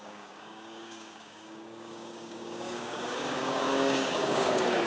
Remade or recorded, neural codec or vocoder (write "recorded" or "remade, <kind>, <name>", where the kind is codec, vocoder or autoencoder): remade, codec, DAC